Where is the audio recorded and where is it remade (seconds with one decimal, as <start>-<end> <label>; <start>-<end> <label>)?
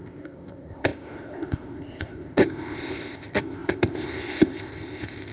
0.0-5.3 remade